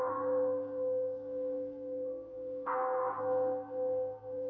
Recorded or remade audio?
remade